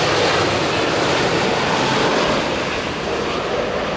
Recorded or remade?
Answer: recorded